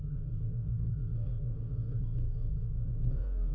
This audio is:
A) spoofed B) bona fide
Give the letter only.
A